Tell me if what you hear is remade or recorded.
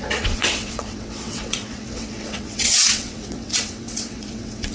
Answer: remade